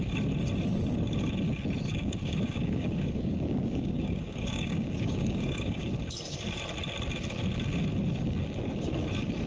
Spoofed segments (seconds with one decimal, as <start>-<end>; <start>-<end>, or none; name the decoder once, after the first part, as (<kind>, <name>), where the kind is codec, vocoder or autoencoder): 1.9-5.9 (codec, DAC)